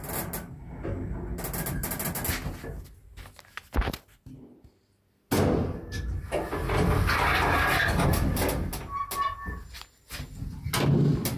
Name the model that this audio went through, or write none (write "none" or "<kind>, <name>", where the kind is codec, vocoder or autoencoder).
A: none